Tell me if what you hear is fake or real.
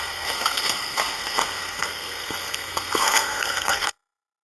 fake